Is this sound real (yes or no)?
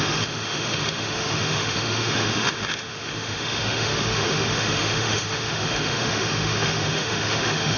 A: no